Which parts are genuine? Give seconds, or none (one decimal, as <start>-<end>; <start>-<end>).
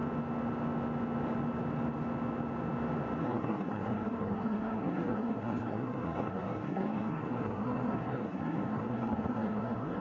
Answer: 0.0-3.2